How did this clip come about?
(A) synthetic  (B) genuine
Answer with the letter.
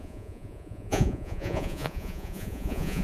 A